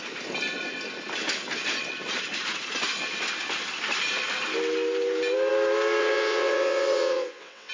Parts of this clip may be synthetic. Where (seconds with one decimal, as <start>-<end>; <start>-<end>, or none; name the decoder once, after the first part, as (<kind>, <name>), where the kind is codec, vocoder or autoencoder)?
6.0-7.7 (vocoder, WaveNeXt)